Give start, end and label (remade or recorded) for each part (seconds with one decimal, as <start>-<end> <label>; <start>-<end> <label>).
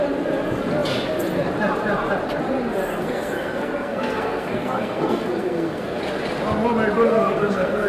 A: 0.0-2.9 recorded; 2.9-6.0 remade; 6.0-7.1 recorded; 7.1-7.9 remade